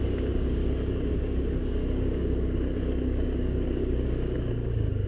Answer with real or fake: fake